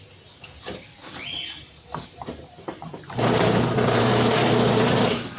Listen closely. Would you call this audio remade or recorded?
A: remade